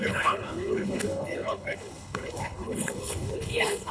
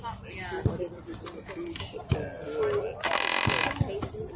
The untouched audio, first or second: second